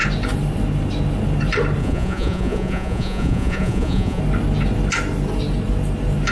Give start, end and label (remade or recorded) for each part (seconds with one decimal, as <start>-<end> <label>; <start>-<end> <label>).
0.0-1.8 recorded; 1.8-4.2 remade; 4.2-6.3 recorded